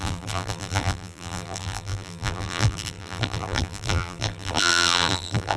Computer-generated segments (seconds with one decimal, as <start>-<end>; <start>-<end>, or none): 0.0-5.6